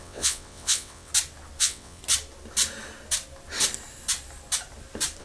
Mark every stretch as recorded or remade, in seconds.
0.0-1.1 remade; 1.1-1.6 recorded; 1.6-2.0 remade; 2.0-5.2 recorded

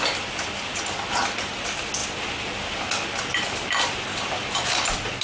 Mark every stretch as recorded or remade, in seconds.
0.0-5.2 recorded

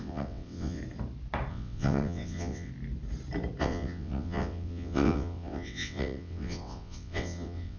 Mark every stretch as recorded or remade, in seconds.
0.0-0.8 remade; 0.8-1.5 recorded; 1.5-2.7 remade; 2.7-3.6 recorded; 3.6-7.8 remade

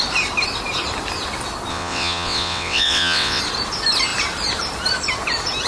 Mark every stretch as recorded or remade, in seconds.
0.0-1.7 recorded; 1.7-3.4 remade; 3.4-5.7 recorded

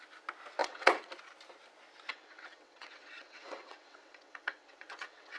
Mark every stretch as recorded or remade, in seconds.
0.0-0.6 recorded; 0.6-1.1 remade; 1.1-2.1 recorded; 2.1-5.4 remade

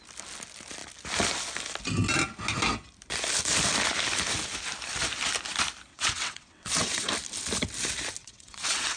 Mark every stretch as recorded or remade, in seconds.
0.0-5.9 recorded; 5.9-7.1 remade; 7.1-8.2 recorded; 8.2-9.0 remade

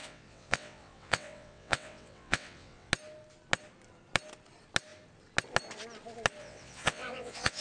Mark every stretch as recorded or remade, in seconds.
0.0-2.9 remade; 2.9-6.4 recorded; 6.4-7.6 remade